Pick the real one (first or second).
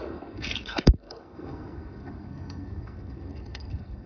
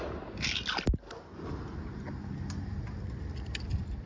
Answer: second